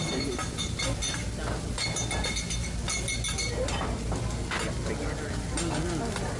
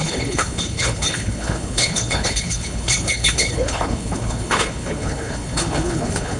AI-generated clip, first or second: second